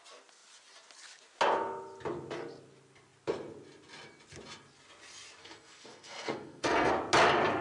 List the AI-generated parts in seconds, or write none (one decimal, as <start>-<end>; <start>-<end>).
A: 5.4-6.9